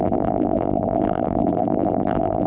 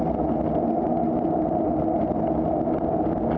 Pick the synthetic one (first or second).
first